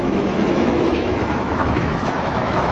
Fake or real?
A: fake